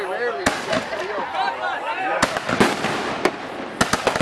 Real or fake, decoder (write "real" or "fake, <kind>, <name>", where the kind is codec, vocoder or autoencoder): real